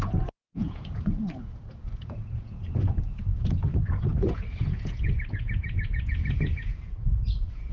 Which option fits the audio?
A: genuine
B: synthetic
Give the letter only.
B